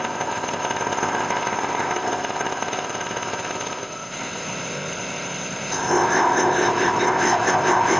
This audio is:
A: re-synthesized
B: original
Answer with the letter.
A